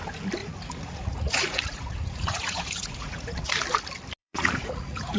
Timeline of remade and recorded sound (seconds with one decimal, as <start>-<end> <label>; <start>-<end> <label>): 0.0-0.4 recorded; 0.4-3.5 remade; 3.5-4.2 recorded; 4.2-5.2 remade